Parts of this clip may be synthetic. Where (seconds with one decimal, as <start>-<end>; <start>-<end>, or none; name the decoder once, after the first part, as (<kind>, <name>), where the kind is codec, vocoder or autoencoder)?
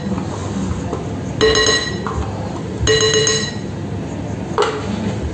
none